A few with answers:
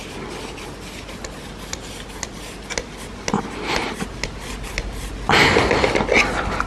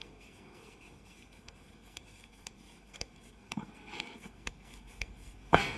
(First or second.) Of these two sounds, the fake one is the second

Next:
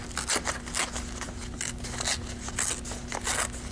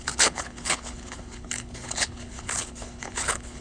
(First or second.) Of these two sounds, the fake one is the second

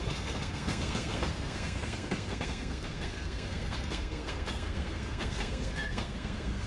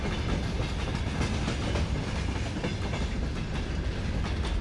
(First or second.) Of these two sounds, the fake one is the first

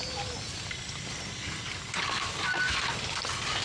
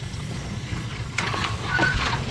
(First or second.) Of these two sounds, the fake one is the second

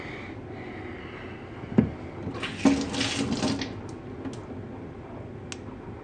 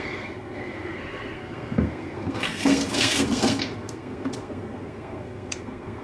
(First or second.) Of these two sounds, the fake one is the second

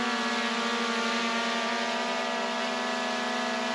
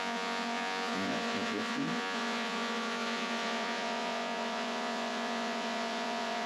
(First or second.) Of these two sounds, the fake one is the second